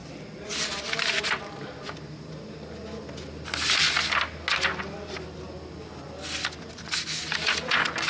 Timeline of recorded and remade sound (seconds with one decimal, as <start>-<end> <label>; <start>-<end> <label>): 0.0-8.1 recorded